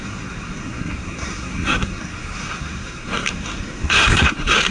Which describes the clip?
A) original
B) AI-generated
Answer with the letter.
B